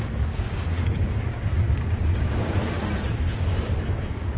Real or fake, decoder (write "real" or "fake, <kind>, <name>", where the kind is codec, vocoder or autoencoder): fake, codec, DAC